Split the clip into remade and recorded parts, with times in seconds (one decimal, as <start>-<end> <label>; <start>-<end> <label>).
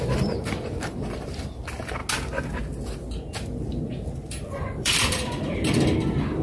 0.0-2.0 remade; 2.0-3.9 recorded; 3.9-6.4 remade